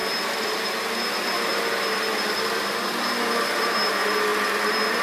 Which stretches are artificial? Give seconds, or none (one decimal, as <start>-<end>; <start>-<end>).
none

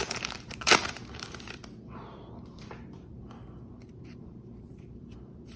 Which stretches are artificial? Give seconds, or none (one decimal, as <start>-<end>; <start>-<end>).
0.0-1.6; 2.2-5.6

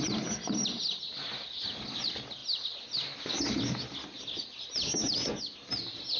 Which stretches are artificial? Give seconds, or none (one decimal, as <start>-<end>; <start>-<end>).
none